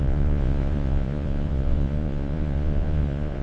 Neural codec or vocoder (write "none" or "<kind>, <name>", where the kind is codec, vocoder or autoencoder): vocoder, Vocos